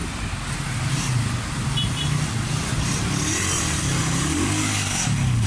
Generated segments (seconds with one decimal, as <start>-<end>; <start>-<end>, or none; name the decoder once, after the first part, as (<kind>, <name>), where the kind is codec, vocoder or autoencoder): 3.8-5.5 (codec, DAC)